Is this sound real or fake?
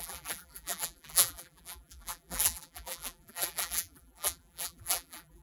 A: fake